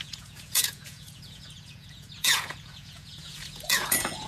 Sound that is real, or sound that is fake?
fake